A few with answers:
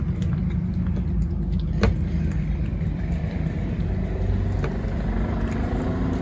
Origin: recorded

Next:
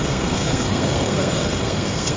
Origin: remade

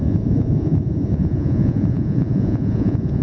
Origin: remade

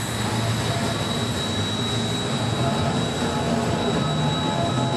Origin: recorded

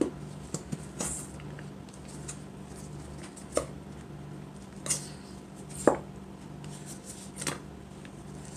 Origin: recorded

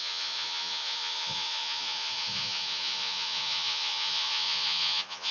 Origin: remade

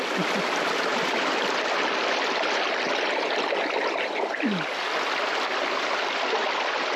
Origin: recorded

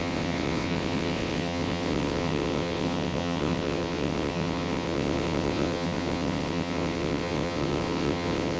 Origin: remade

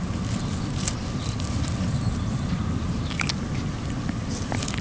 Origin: recorded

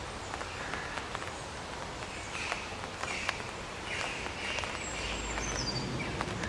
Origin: recorded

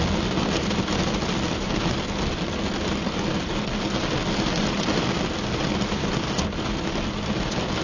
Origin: recorded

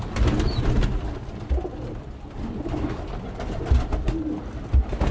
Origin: recorded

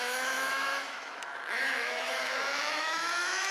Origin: remade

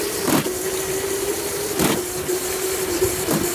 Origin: remade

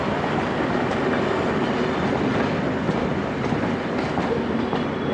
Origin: recorded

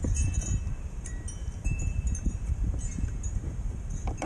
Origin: remade